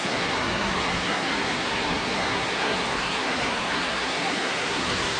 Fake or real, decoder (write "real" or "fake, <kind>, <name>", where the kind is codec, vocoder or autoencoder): fake, codec, SNAC